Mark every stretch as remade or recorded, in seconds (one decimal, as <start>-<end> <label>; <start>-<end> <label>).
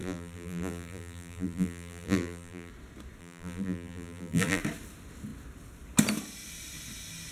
0.0-2.7 remade; 2.7-3.2 recorded; 3.2-4.6 remade; 4.6-7.3 recorded